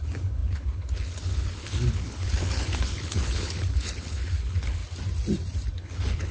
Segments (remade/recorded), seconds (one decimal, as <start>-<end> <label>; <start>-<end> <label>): 0.0-4.8 remade; 4.8-5.7 recorded; 5.7-6.3 remade